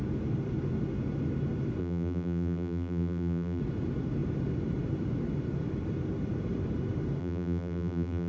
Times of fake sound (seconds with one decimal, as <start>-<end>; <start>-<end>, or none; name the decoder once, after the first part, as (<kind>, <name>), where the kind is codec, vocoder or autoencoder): 1.8-3.6 (vocoder, BigVGAN v2); 7.2-8.3